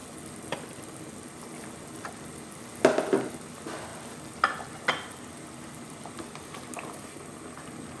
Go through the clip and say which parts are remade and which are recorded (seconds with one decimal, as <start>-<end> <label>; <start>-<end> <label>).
0.0-2.6 remade; 2.6-3.9 recorded; 3.9-6.2 remade; 6.2-8.0 recorded